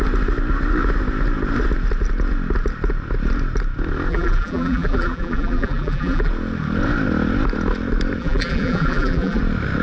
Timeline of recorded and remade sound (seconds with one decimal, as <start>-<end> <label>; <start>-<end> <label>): 0.0-4.1 recorded; 4.1-6.3 remade; 6.3-8.2 recorded; 8.2-9.4 remade; 9.4-9.8 recorded

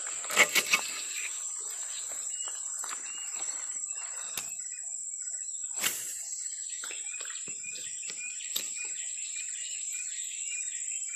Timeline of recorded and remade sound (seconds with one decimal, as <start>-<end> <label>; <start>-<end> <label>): 0.0-1.8 remade; 1.8-2.6 recorded; 2.6-11.2 remade

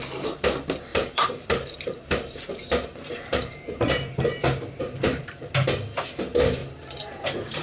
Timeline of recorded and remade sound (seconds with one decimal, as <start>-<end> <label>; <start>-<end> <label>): 0.0-0.9 recorded; 0.9-5.5 remade; 5.5-6.6 recorded; 6.6-7.6 remade

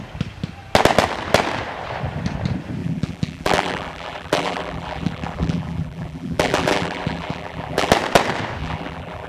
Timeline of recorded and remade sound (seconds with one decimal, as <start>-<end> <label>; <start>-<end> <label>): 0.0-2.8 recorded; 2.8-7.9 remade; 7.9-8.6 recorded; 8.6-9.3 remade

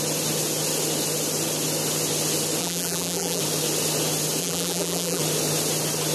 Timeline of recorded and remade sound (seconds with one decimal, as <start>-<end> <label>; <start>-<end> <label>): 0.0-2.6 recorded; 2.6-3.4 remade; 3.4-4.4 recorded; 4.4-5.2 remade; 5.2-6.1 recorded

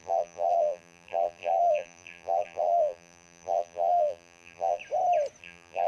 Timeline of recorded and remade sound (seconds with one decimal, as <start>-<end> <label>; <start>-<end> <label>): 0.0-4.8 remade; 4.8-5.4 recorded; 5.4-5.9 remade

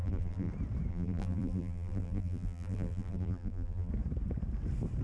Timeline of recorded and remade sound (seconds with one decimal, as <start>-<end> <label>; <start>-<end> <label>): 0.0-0.5 remade; 0.5-0.9 recorded; 0.9-3.9 remade; 3.9-5.0 recorded